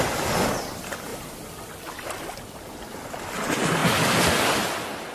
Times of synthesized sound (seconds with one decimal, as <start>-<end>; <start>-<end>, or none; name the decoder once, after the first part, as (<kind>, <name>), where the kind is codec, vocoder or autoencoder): none